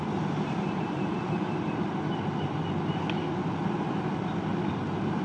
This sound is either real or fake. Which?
real